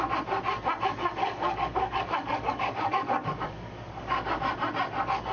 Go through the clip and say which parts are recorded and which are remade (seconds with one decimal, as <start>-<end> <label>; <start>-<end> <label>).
0.0-1.2 recorded; 1.2-4.4 remade; 4.4-5.3 recorded